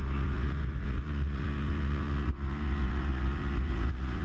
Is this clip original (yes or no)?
no